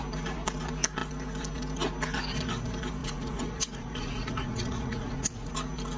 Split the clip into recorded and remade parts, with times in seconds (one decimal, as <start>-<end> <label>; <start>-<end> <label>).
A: 0.0-3.0 recorded; 3.0-5.5 remade; 5.5-6.0 recorded